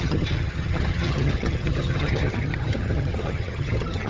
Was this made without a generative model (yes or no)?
no